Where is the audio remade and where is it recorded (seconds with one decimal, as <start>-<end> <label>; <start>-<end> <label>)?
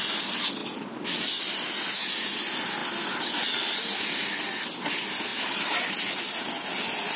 0.0-7.2 recorded